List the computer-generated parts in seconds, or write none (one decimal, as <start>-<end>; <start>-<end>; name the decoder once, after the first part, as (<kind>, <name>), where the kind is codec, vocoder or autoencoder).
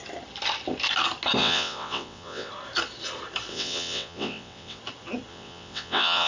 1.4-2.5 (vocoder, WaveNeXt); 3.5-4.8; 5.3-6.3